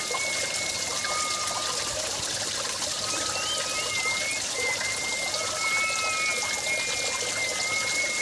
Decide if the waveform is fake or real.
real